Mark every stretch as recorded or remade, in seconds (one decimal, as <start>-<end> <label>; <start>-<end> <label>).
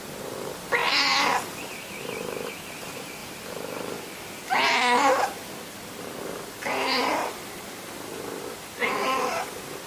0.0-0.8 recorded; 0.8-2.5 remade; 2.5-3.2 recorded; 3.2-4.1 remade; 4.1-5.1 recorded; 5.1-6.2 remade; 6.2-9.9 recorded